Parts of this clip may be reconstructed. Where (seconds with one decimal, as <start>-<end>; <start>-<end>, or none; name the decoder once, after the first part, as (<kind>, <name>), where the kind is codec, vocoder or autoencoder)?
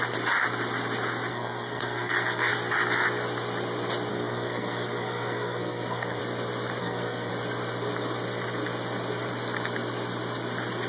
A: 1.3-2.5 (codec, SNAC); 4.1-6.2; 6.8-7.3